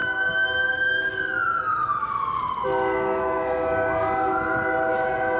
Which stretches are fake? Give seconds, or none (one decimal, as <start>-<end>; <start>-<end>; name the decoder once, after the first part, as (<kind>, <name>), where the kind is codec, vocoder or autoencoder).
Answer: none